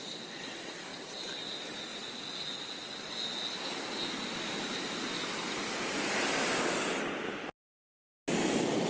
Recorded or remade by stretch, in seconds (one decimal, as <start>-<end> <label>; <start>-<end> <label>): 0.0-8.9 recorded